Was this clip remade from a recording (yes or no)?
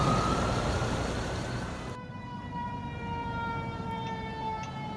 yes